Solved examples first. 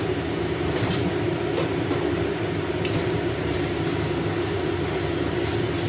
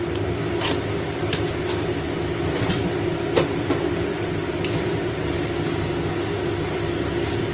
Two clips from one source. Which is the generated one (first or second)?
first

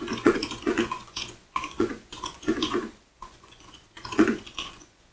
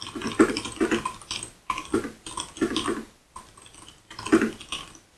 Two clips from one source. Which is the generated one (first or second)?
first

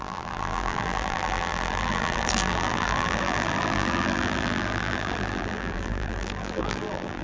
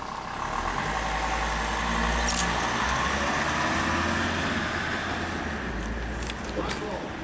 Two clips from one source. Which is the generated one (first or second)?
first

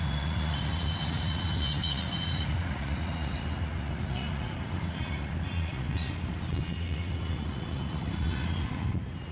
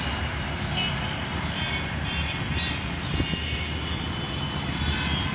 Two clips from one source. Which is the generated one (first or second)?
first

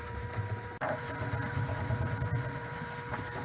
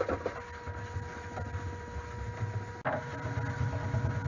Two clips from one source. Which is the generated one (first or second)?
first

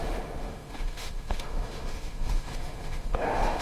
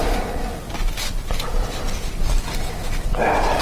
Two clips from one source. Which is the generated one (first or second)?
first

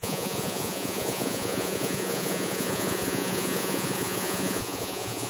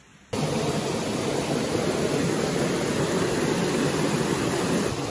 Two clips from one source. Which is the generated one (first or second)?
first